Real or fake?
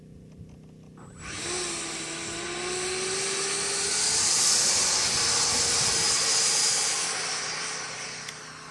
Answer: real